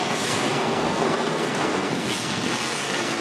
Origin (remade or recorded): remade